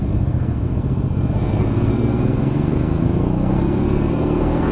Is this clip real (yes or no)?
no